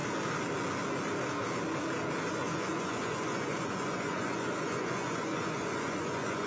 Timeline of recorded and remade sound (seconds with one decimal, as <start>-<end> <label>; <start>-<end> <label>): 0.0-2.3 recorded; 2.3-6.5 remade